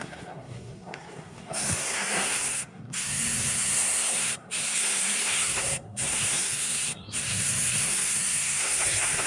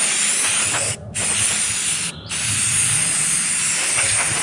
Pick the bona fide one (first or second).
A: second